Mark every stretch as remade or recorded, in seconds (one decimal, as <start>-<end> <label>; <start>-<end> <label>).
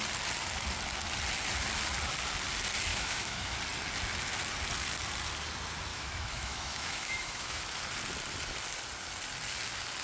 0.0-2.9 recorded; 2.9-3.6 remade; 3.6-5.9 recorded; 5.9-7.6 remade; 7.6-10.0 recorded